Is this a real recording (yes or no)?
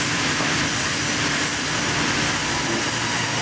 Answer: yes